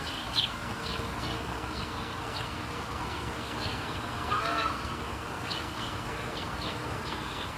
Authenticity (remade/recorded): remade